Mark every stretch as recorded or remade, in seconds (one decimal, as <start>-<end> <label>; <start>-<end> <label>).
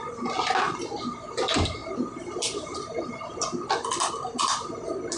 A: 0.0-1.8 recorded; 1.8-4.1 remade; 4.1-5.2 recorded